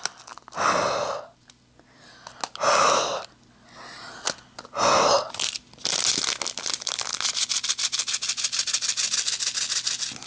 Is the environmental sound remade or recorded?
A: recorded